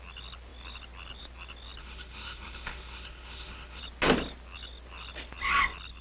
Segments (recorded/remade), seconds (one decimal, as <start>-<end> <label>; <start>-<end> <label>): 0.0-1.8 recorded; 1.8-3.8 remade; 3.8-6.0 recorded

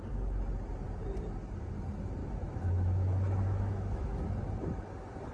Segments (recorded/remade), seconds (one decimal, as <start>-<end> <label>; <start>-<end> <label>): 0.0-2.2 recorded; 2.2-4.2 remade; 4.2-5.3 recorded

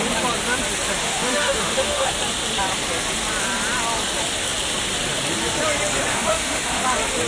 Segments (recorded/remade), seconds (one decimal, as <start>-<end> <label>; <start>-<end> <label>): 0.0-1.0 recorded; 1.0-2.1 remade; 2.1-6.1 recorded; 6.1-6.8 remade; 6.8-7.3 recorded

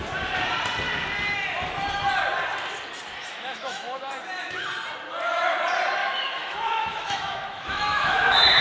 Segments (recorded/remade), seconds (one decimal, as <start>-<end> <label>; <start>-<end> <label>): 0.0-3.2 recorded; 3.2-4.1 remade; 4.1-6.0 recorded; 6.0-8.6 remade